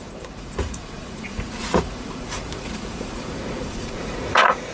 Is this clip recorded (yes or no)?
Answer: no